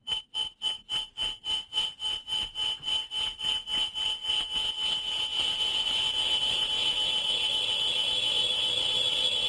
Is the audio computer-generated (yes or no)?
yes